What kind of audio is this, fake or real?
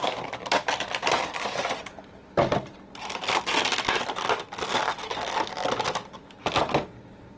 real